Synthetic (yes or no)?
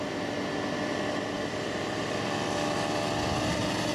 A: no